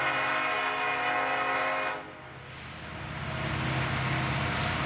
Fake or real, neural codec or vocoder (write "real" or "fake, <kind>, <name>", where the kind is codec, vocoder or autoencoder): real